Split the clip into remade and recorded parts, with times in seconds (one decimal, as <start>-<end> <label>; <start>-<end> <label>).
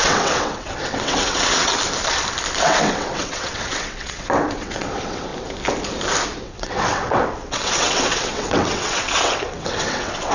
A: 0.0-1.7 remade; 1.7-2.6 recorded; 2.6-5.3 remade; 5.3-6.4 recorded; 6.4-10.3 remade